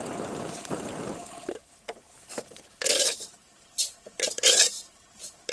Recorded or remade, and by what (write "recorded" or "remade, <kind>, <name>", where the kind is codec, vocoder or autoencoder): remade, vocoder, BigVGAN v2